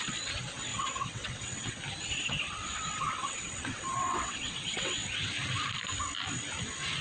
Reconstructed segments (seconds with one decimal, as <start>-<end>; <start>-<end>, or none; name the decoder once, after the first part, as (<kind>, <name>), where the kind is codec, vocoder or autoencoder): 0.7-1.8 (vocoder, WaveNeXt); 2.6-5.3